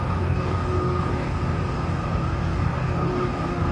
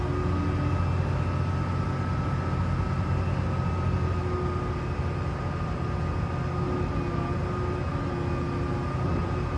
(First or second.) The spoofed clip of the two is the first